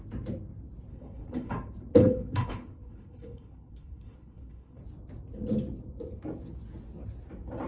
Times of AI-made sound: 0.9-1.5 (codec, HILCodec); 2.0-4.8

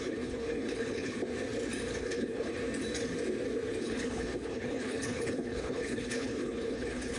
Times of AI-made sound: 0.0-1.2 (codec, HILCodec); 2.0-2.6; 3.8-7.2

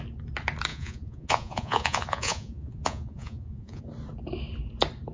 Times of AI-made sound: 0.7-3.8 (vocoder, Vocos)

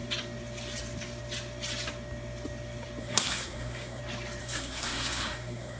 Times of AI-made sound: 3.0-4.0 (codec, SNAC); 4.4-5.8

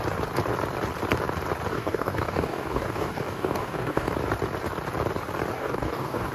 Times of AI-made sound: 1.7-4.1 (codec, DAC); 5.5-6.3

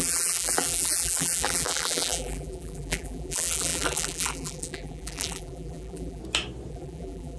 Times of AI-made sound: 0.0-6.2 (vocoder, BigVGAN v2); 6.7-7.4